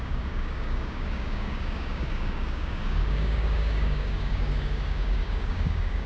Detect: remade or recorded remade